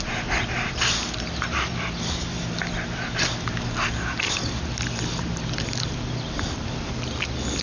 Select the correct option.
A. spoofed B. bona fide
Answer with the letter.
A